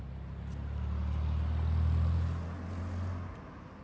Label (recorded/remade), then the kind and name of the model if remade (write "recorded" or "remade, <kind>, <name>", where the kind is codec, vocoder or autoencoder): recorded